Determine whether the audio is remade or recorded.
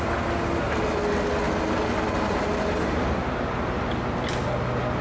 recorded